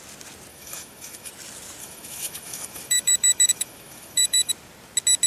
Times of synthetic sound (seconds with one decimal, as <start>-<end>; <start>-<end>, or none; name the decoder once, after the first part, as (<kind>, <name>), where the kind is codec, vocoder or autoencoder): 0.5-1.3 (autoencoder, DAC-VAE); 1.8-4.5